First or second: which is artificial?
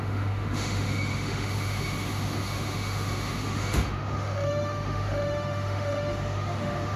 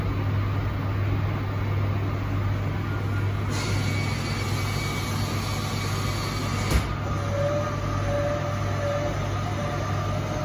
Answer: first